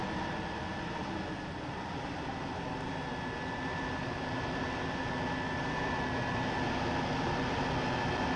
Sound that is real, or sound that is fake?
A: real